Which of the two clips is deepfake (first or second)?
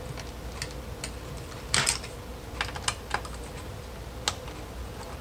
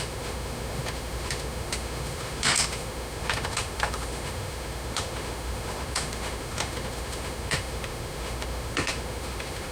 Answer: second